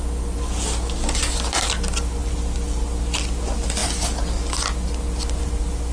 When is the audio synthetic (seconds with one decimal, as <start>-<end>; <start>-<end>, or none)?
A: none